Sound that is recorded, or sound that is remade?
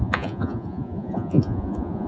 remade